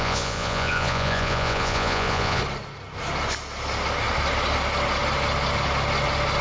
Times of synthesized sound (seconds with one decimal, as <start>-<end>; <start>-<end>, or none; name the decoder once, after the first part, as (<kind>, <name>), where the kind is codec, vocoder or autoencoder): 0.0-2.4 (vocoder, Vocos)